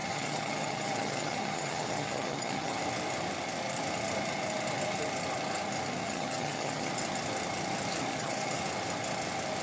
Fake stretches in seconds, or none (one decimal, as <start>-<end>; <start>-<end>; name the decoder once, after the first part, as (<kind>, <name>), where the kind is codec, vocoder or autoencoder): 0.0-2.8 (vocoder, HiFi-GAN); 6.0-6.9; 8.1-8.6